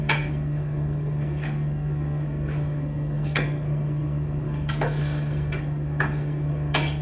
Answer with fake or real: fake